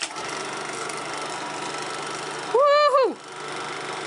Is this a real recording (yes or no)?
yes